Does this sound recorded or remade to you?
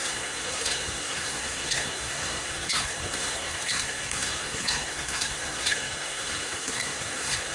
remade